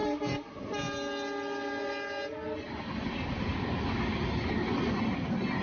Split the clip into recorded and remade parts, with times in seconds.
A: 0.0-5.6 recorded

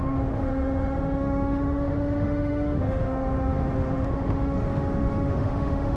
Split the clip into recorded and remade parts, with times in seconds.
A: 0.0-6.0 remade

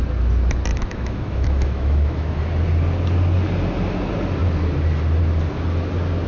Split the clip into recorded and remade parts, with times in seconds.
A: 0.0-0.7 recorded; 0.7-2.4 remade; 2.4-6.3 recorded

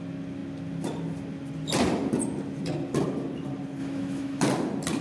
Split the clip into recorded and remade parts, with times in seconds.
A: 0.0-3.8 recorded; 3.8-4.4 remade; 4.4-5.0 recorded

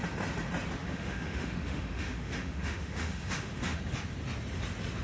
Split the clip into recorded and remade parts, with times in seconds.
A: 0.0-0.8 recorded; 0.8-3.8 remade; 3.8-5.0 recorded

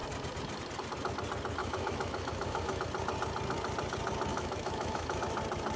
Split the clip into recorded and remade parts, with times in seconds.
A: 0.0-1.6 recorded; 1.6-2.8 remade; 2.8-4.3 recorded; 4.3-5.2 remade; 5.2-5.8 recorded

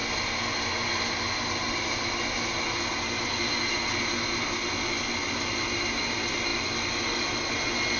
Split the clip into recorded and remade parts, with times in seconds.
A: 0.0-8.0 recorded